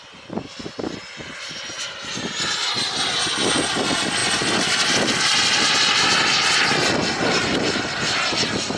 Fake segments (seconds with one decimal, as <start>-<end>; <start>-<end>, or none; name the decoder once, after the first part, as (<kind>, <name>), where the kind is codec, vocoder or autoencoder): none